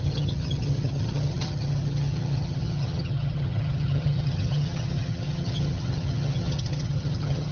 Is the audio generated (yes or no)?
yes